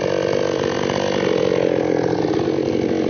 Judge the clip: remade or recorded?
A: recorded